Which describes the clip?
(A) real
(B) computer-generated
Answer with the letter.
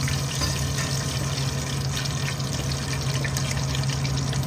A